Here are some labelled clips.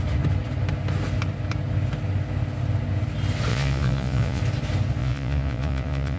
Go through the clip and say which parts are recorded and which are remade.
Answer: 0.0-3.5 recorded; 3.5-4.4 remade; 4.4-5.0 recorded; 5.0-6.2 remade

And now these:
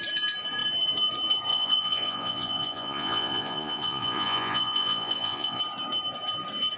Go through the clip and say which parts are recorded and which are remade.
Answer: 0.0-1.5 recorded; 1.5-5.6 remade; 5.6-6.8 recorded